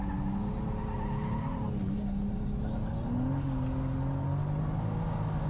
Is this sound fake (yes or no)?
no